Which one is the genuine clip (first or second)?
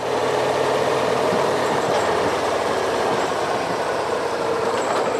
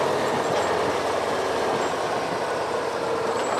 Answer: second